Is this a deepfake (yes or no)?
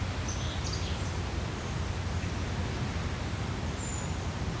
no